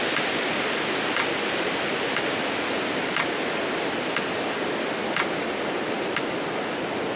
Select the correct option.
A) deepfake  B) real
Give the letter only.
B